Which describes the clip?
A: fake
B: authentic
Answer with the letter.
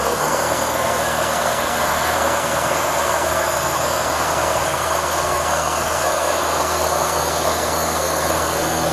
A